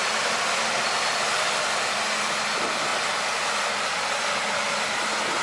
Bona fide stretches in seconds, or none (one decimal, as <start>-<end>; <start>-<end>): 0.0-5.4